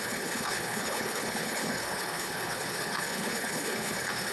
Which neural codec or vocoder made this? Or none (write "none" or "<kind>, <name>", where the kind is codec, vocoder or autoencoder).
codec, HILCodec